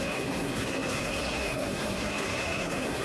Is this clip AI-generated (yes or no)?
yes